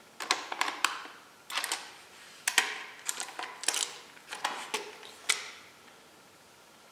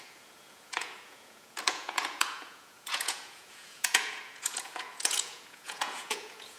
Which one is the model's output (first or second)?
second